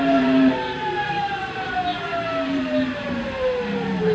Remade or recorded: remade